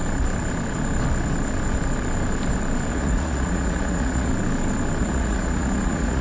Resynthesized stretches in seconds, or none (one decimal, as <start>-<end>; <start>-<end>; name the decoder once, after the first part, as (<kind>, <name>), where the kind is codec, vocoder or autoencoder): 2.9-4.3 (vocoder, Vocos); 5.0-6.2